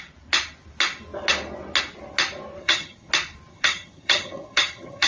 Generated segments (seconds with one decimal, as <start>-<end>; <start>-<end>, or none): 2.6-3.1; 3.5-5.1